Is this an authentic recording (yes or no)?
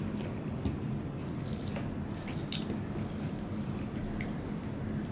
yes